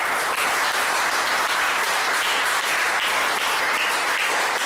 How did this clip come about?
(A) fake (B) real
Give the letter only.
B